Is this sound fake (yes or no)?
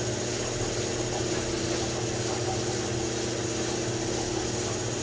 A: no